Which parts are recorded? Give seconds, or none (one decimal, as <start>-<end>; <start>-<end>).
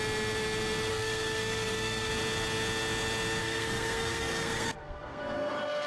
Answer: 0.0-0.9; 2.1-3.4; 5.5-5.9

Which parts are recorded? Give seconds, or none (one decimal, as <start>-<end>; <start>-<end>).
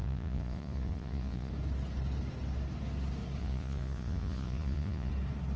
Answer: 1.5-3.4; 5.1-5.6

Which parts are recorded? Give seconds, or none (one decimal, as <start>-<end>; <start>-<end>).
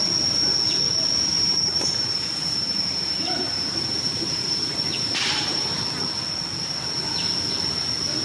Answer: 0.0-1.3; 5.8-8.2